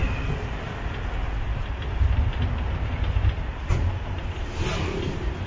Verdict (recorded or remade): recorded